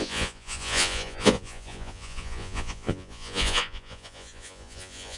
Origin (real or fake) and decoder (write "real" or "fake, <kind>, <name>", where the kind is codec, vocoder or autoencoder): fake, vocoder, Vocos